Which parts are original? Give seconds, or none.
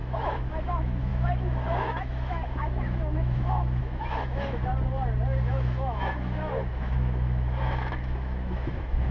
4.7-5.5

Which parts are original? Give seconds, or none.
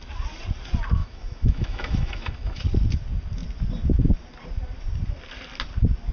0.0-1.0; 2.6-6.1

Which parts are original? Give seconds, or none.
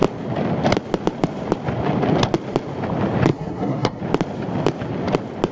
0.0-3.3; 4.0-5.5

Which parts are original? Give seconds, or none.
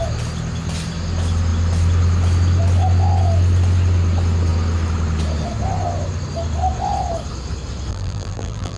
0.0-7.9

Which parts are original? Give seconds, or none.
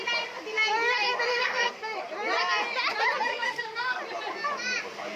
0.0-1.3; 2.0-3.3; 4.0-5.2